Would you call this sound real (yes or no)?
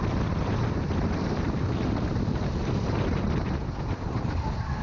yes